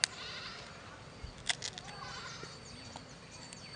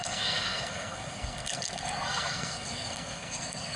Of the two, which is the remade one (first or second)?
second